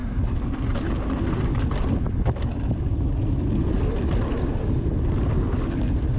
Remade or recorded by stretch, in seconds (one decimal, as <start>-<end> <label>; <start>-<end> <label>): 0.0-6.2 recorded